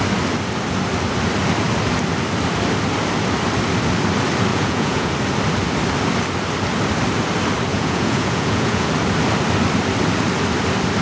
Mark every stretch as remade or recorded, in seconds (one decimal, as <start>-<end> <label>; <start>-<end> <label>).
0.0-4.5 recorded; 4.5-5.1 remade; 5.1-7.7 recorded; 7.7-8.9 remade; 8.9-11.0 recorded

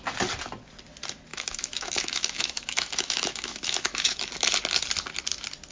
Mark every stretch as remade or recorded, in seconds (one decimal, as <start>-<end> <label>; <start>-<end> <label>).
0.0-1.3 recorded; 1.3-4.2 remade; 4.2-5.7 recorded

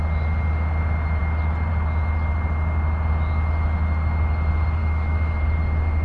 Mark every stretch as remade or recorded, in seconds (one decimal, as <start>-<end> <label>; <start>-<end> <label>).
0.0-4.8 recorded; 4.8-5.4 remade; 5.4-6.0 recorded